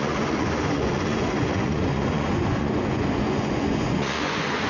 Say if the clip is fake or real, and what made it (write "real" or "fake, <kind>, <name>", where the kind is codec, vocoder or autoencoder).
fake, vocoder, Vocos